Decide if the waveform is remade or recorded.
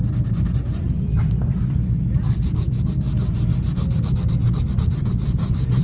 recorded